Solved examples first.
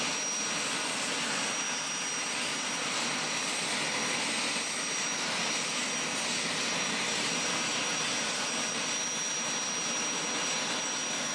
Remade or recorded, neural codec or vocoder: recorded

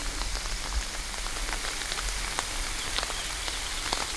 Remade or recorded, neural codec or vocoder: recorded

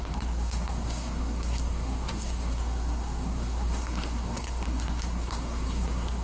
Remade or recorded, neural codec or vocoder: remade, codec, SNAC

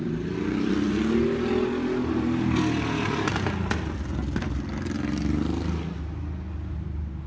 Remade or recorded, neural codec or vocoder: recorded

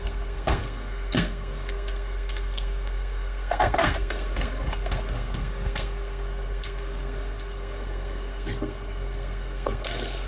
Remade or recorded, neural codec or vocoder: remade, codec, SNAC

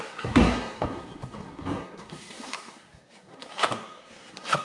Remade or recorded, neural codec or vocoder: remade, codec, SNAC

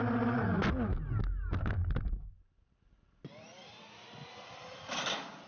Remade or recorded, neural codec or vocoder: recorded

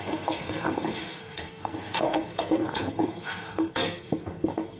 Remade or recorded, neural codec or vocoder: remade, codec, SNAC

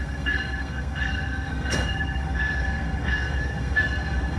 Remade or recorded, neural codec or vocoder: remade, codec, SNAC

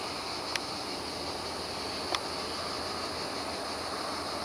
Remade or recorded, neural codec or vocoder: recorded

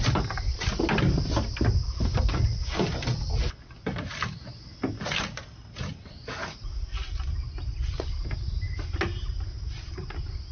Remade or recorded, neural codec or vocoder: recorded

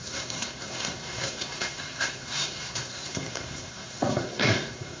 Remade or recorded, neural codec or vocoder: remade, codec, SNAC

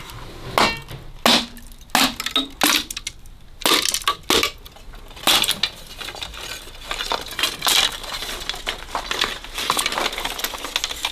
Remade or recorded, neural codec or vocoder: recorded